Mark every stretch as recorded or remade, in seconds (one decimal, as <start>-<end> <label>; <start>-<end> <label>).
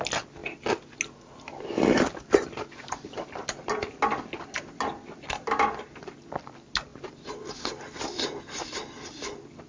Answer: 0.0-9.7 recorded